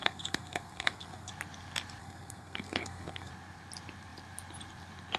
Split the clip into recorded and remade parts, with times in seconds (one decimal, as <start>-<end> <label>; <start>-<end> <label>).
0.0-1.3 remade; 1.3-2.0 recorded; 2.0-3.3 remade; 3.3-5.2 recorded